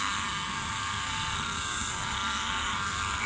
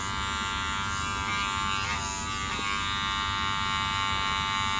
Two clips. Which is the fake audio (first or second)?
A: first